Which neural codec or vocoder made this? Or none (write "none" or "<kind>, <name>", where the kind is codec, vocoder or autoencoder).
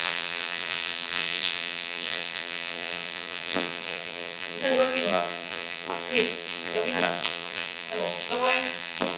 vocoder, BigVGAN v2